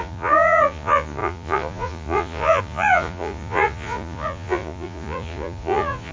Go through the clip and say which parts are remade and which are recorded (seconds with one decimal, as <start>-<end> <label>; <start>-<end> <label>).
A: 0.0-6.1 remade